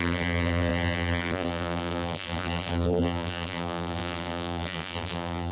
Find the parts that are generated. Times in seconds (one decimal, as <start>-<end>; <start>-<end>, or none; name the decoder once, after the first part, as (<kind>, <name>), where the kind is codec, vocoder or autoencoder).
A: 0.0-5.5 (vocoder, BigVGAN v2)